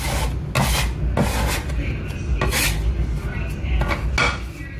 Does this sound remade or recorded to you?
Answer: recorded